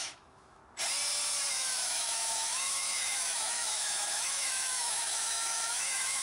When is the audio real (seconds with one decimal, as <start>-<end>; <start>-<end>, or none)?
0.6-1.5